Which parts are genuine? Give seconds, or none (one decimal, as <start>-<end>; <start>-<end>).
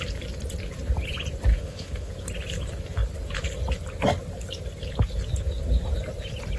0.0-1.5; 2.1-6.6